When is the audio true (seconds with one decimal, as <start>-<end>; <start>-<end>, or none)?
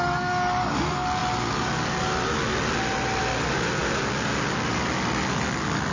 0.0-5.9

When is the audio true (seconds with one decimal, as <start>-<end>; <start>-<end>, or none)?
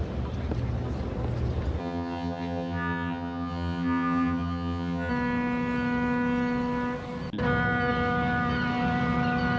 0.0-1.8; 5.1-9.6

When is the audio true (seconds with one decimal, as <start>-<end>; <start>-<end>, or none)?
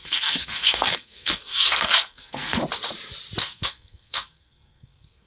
2.6-3.4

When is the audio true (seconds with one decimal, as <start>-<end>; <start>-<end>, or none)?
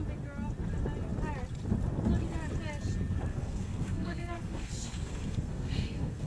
0.0-3.3